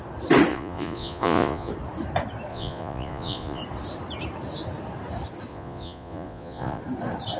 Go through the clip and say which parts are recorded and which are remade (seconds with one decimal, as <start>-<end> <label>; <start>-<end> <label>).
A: 0.0-0.5 recorded; 0.5-1.7 remade; 1.7-2.5 recorded; 2.5-3.6 remade; 3.6-5.5 recorded; 5.5-6.8 remade; 6.8-7.4 recorded